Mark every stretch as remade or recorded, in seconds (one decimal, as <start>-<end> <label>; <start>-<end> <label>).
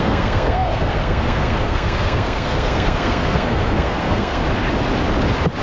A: 0.0-4.4 remade; 4.4-5.6 recorded